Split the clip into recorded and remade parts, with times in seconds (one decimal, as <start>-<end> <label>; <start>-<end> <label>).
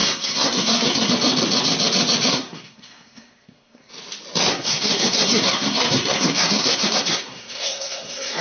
0.0-1.1 remade; 1.1-2.3 recorded; 2.3-3.9 remade; 3.9-4.5 recorded; 4.5-8.4 remade